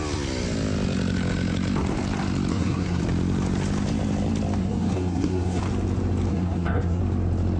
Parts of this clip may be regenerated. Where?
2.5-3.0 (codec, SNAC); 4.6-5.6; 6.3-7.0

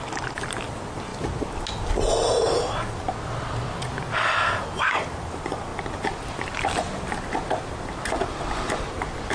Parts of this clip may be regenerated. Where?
none

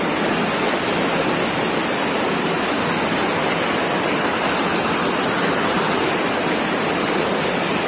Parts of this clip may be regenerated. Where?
none

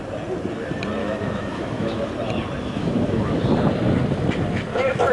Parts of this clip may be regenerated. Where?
1.0-2.1 (autoencoder, DAC-VAE); 2.6-3.4